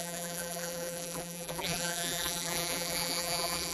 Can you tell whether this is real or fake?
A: fake